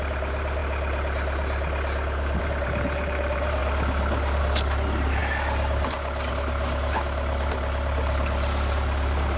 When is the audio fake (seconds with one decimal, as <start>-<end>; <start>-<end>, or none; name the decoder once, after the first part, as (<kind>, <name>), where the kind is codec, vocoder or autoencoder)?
0.0-0.6 (vocoder, BigVGAN v2); 2.4-3.6; 4.4-9.4